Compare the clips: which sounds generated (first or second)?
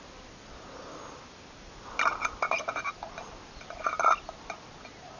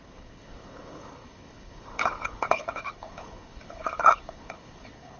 second